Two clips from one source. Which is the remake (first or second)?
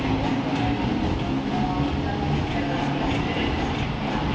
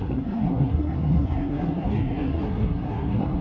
second